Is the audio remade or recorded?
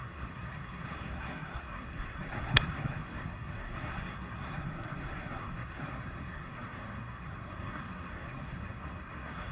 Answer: remade